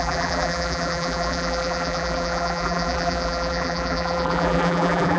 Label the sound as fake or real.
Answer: fake